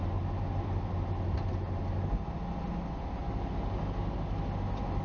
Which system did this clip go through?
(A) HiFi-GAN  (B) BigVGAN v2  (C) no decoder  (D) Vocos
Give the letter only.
C